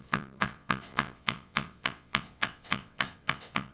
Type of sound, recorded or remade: remade